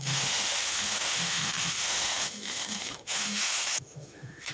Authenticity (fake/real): fake